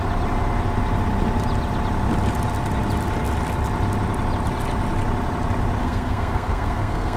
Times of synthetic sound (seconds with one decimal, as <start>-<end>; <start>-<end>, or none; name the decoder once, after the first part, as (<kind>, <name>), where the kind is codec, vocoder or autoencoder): 5.8-7.2 (codec, SNAC)

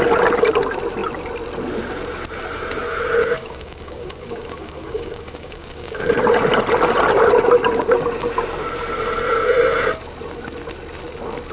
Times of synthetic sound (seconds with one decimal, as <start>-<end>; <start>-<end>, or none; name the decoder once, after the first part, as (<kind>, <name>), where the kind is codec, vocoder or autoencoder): 3.2-6.1 (codec, DAC)